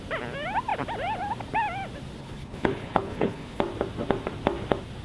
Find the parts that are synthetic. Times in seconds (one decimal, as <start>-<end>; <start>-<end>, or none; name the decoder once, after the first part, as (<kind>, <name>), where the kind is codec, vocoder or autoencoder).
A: 2.2-3.6 (codec, HILCodec)